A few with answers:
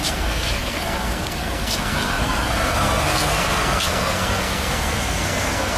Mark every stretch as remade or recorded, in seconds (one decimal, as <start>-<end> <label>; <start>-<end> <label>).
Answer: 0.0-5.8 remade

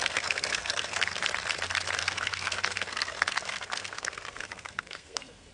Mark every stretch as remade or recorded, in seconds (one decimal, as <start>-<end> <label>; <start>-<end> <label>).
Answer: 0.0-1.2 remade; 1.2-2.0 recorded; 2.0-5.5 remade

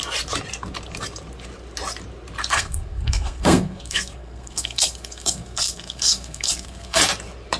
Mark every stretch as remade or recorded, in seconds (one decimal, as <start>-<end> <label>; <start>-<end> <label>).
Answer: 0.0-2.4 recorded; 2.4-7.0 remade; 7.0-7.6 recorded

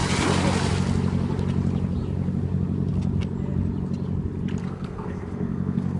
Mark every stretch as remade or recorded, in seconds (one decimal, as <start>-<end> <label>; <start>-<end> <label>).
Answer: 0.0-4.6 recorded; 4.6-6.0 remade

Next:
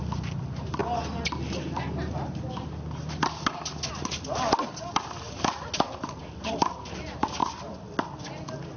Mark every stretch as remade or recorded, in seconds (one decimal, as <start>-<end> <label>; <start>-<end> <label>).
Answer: 0.0-8.8 recorded